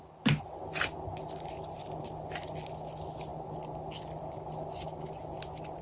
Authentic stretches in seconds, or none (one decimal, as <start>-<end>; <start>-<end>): 0.0-5.8